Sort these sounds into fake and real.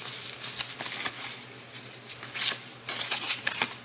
real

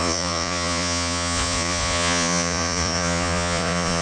fake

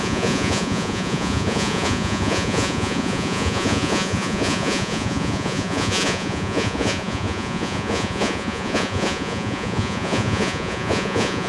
fake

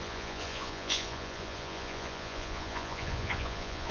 fake